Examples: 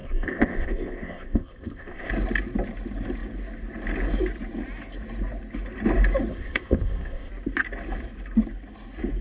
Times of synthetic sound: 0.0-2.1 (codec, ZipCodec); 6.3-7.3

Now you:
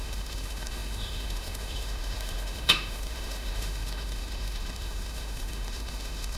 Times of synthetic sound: 0.0-6.4 (autoencoder, DAC-VAE)

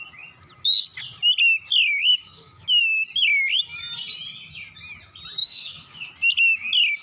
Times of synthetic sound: 2.1-2.8 (codec, DAC); 5.4-6.1

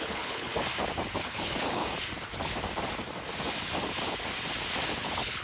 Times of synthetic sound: 0.0-0.5 (codec, HILCodec); 1.2-1.8; 5.0-5.4

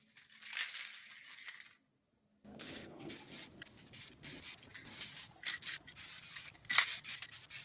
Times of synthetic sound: 2.5-3.1 (codec, SNAC)

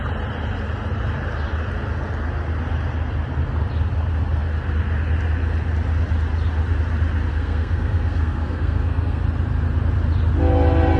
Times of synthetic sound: 7.3-9.2 (codec, SNAC)

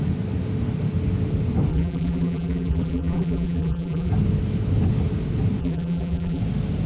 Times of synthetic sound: 1.7-4.1 (vocoder, BigVGAN v2); 5.6-6.4

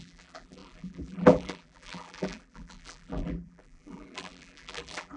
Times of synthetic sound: 0.0-5.2 (vocoder, BigVGAN v2)